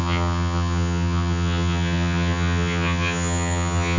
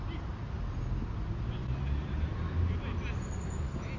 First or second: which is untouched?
second